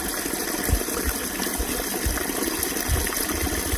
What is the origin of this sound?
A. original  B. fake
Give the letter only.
A